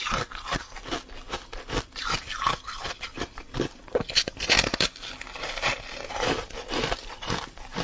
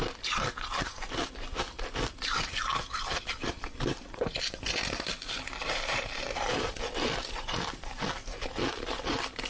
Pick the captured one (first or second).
first